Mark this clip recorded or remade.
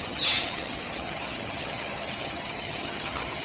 remade